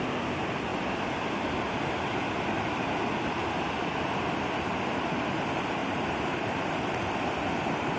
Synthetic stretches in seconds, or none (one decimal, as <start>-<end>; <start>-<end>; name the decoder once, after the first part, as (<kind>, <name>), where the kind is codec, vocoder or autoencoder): 5.8-7.2 (vocoder, BigVGAN v2)